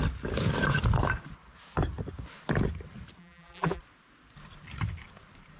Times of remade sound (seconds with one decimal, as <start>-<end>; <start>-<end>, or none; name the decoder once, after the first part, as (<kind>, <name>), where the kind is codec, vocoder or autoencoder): 3.2-3.8 (vocoder, BigVGAN v2)